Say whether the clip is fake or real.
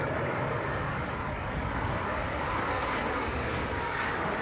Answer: fake